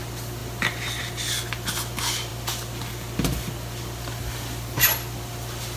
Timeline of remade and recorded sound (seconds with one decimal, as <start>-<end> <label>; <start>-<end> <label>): 0.0-5.8 recorded